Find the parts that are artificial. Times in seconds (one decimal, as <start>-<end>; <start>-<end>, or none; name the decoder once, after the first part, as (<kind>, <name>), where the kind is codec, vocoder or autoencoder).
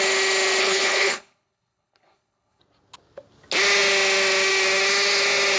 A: 0.6-2.6 (codec, HILCodec)